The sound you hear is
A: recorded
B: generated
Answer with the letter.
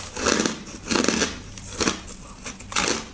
A